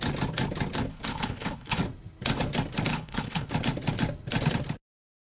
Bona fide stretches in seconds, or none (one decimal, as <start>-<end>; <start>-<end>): 0.0-0.9; 1.8-2.9; 3.5-5.2